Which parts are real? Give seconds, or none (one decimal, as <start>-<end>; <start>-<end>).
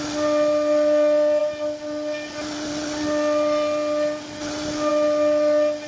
0.0-5.9